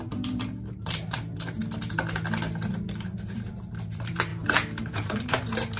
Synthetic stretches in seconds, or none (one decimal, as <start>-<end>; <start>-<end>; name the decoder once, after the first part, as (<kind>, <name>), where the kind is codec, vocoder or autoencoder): 0.0-1.6 (vocoder, BigVGAN v2); 2.7-4.3; 4.8-5.8

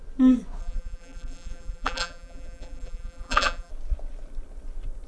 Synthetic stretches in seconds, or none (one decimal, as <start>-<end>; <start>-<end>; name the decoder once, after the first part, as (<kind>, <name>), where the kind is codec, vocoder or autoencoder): 0.6-3.7 (vocoder, BigVGAN v2)

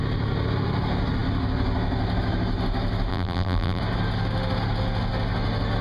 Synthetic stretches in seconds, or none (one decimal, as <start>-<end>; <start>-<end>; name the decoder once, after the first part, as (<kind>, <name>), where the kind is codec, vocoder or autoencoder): 3.1-3.8 (vocoder, BigVGAN v2)

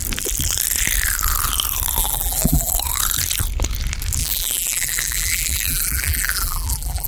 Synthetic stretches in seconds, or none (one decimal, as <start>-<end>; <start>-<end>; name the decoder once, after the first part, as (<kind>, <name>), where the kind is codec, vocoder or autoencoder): 2.0-2.7 (vocoder, BigVGAN v2); 4.2-7.1

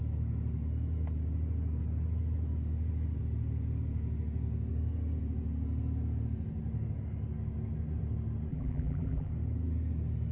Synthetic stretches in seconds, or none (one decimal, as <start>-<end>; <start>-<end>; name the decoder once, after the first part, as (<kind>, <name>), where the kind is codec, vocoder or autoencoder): 8.5-9.3 (vocoder, BigVGAN v2)

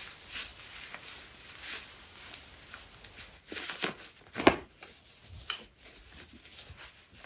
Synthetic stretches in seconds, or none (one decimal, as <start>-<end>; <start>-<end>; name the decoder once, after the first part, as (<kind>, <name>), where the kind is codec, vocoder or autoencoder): 0.0-0.5 (vocoder, BigVGAN v2); 4.3-5.2; 6.6-7.3